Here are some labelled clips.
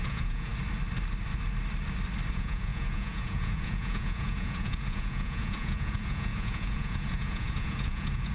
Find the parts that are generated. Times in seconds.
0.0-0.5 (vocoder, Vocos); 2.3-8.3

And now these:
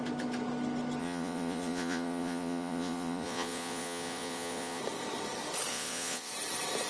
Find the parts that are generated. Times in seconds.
1.0-4.8 (vocoder, Vocos); 5.7-6.3

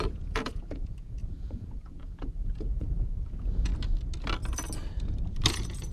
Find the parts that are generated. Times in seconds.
0.0-3.7 (vocoder, Vocos); 5.5-5.9